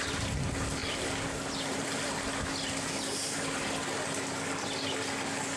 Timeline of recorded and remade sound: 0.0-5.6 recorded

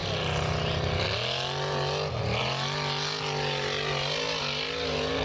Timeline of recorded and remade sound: 0.0-5.2 recorded

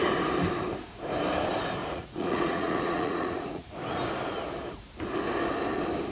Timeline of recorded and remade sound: 0.0-1.8 recorded; 1.8-3.8 remade; 3.8-6.1 recorded

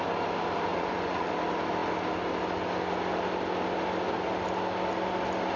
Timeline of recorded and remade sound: 0.0-0.7 recorded; 0.7-1.3 remade; 1.3-5.6 recorded

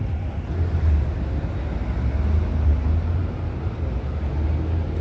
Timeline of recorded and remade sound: 0.0-5.0 recorded

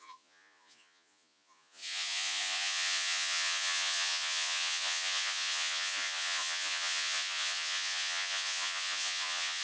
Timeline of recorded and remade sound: 0.0-9.6 remade